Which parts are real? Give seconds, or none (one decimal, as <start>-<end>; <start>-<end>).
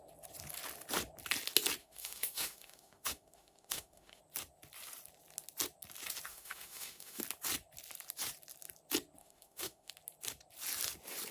0.0-1.8; 4.2-6.3; 7.2-9.2; 9.9-11.3